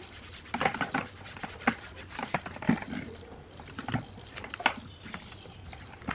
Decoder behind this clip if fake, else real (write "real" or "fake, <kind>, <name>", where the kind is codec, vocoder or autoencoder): real